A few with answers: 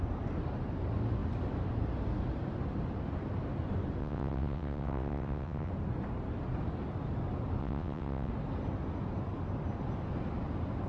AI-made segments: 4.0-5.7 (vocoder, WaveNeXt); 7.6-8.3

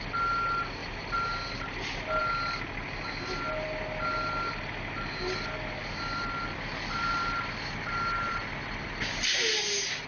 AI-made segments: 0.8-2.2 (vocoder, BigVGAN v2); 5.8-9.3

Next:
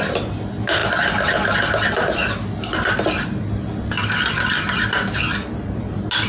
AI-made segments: none

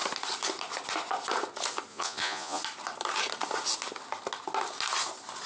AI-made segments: 1.9-2.6 (vocoder, Vocos)

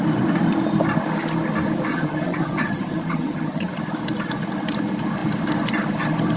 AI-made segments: 1.9-3.7 (vocoder, HiFi-GAN)

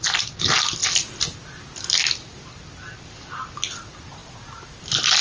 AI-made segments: none

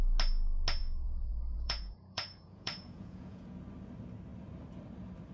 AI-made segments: 0.8-3.6 (vocoder, Vocos)

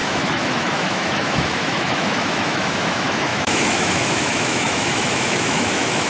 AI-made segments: 0.0-6.1 (autoencoder, DAC-VAE)